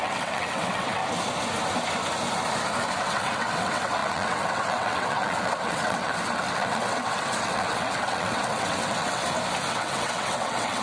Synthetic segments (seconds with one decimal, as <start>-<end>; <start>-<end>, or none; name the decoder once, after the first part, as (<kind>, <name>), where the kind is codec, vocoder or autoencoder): 0.0-1.0 (vocoder, WaveNeXt); 3.0-9.2; 9.7-10.8